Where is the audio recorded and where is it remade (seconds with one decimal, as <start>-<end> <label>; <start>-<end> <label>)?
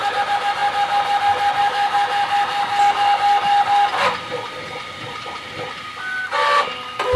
0.0-7.2 recorded